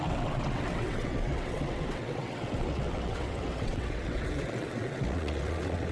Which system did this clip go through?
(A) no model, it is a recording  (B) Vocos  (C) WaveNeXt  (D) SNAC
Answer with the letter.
C